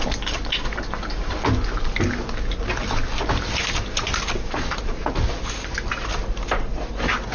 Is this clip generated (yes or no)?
no